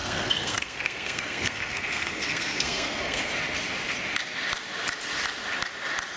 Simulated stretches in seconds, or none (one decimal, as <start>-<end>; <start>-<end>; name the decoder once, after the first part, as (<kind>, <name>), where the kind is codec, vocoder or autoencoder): 0.0-3.3 (codec, SNAC)